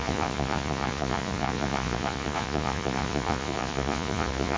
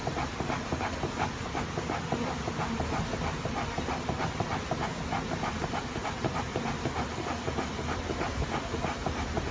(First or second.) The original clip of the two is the second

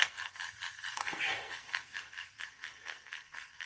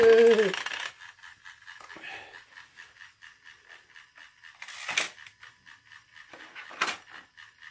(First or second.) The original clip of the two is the second